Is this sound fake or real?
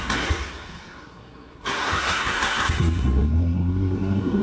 fake